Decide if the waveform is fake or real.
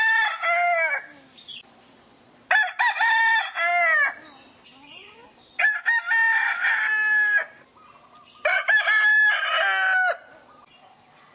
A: real